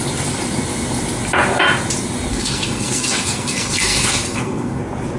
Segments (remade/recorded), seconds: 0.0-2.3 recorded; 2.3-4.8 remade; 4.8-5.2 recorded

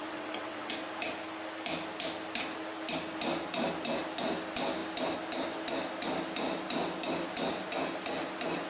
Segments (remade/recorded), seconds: 0.0-0.7 remade; 0.7-8.7 recorded

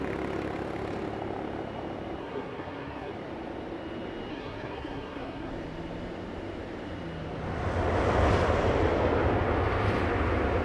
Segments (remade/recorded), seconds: 0.0-2.2 recorded; 2.2-3.1 remade; 3.1-4.3 recorded; 4.3-5.5 remade; 5.5-10.6 recorded

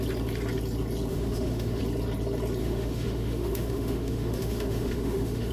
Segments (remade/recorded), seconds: 0.0-1.1 recorded; 1.1-1.8 remade; 1.8-2.6 recorded; 2.6-5.5 remade

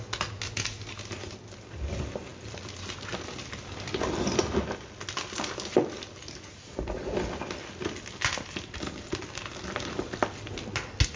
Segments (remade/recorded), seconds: 0.0-11.2 recorded

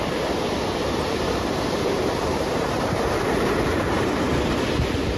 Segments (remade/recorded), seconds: 0.0-1.2 recorded; 1.2-4.3 remade; 4.3-5.2 recorded